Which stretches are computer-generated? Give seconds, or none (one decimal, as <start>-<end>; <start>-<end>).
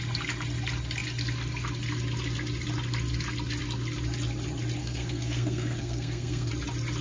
4.8-6.5